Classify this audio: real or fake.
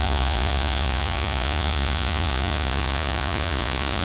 fake